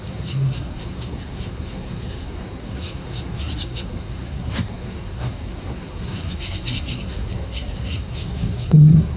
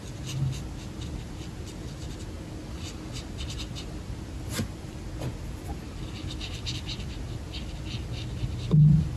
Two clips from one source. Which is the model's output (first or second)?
first